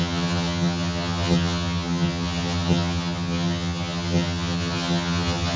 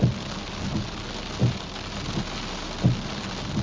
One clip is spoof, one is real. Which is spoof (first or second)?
first